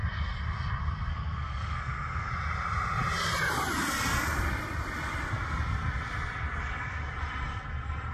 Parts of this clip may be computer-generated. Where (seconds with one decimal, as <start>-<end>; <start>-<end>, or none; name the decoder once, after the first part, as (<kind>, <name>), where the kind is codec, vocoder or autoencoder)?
1.1-2.3 (codec, SNAC)